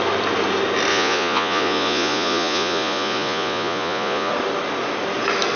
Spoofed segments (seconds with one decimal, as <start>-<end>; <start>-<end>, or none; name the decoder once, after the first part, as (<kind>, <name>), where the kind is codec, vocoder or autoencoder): 0.9-4.3 (vocoder, Vocos)